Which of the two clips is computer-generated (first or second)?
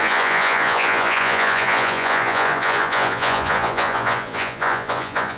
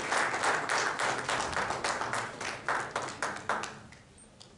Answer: first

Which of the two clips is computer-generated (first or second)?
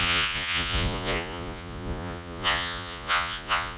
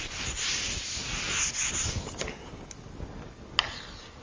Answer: first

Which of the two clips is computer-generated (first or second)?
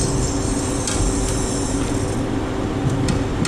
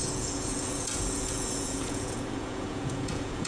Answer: second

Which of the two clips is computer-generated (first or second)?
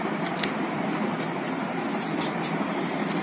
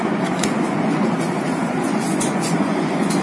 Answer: second